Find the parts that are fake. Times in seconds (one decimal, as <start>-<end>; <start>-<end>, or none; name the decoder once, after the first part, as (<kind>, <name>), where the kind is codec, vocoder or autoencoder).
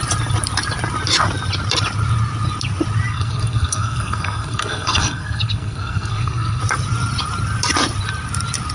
3.1-6.6 (codec, SNAC)